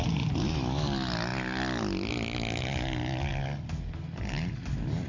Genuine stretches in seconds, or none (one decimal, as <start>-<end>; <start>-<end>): 0.0-5.1